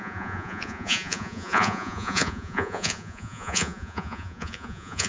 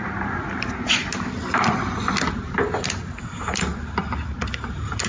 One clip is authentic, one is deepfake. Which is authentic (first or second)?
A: second